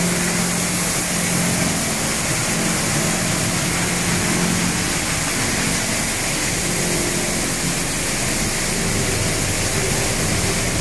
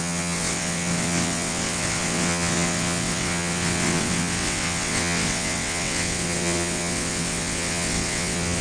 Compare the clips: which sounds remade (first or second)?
second